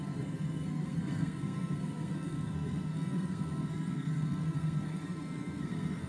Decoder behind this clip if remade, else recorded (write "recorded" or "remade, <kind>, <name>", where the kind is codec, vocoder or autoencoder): remade, codec, SNAC